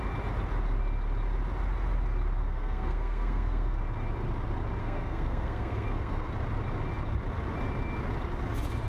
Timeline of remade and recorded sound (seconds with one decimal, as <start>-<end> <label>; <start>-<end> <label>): 0.0-2.4 recorded; 2.4-3.8 remade; 3.8-4.8 recorded; 4.8-6.3 remade; 6.3-8.9 recorded